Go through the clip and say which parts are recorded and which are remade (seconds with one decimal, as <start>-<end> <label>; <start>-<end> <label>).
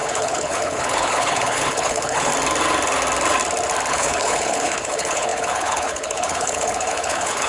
0.0-2.3 remade; 2.3-3.9 recorded; 3.9-7.5 remade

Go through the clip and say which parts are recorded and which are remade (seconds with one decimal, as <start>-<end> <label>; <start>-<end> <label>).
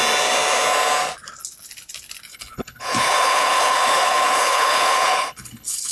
0.0-2.3 recorded; 2.3-5.9 remade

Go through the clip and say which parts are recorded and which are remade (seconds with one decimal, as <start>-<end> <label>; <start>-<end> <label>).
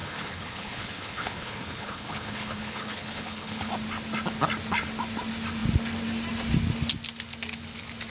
0.0-3.7 remade; 3.7-8.1 recorded